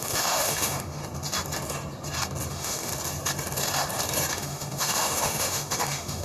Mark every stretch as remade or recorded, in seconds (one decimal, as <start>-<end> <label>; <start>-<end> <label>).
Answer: 0.0-1.0 remade; 1.0-2.5 recorded; 2.5-2.9 remade; 2.9-4.3 recorded; 4.3-6.2 remade